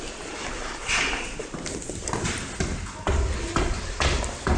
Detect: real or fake real